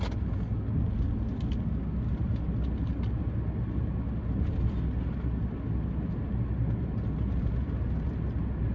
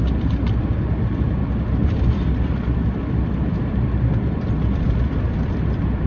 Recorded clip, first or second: first